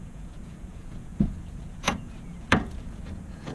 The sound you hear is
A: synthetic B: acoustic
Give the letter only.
A